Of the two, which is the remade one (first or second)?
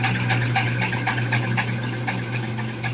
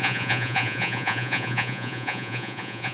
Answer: second